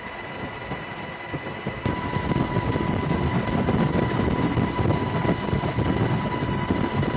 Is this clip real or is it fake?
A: real